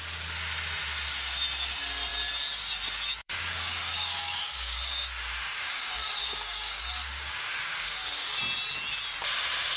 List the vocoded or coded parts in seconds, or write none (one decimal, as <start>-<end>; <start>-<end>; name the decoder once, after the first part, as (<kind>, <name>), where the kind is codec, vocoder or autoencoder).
3.2-8.4 (codec, DAC)